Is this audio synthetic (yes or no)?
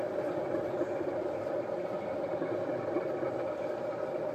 no